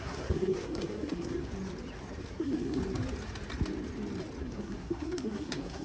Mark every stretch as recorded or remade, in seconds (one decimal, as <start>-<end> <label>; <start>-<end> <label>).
0.0-1.5 remade; 1.5-2.3 recorded; 2.3-2.8 remade; 2.8-4.4 recorded; 4.4-5.8 remade